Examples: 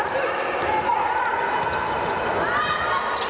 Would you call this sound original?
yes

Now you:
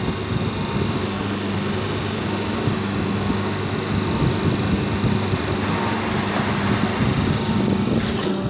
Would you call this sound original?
yes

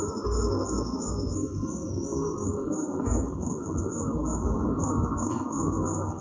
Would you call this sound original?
no